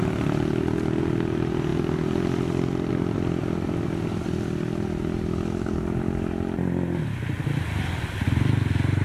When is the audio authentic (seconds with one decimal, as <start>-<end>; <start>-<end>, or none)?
0.0-9.0